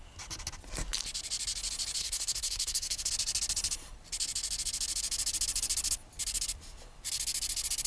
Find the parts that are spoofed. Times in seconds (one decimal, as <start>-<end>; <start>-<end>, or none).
2.0-3.1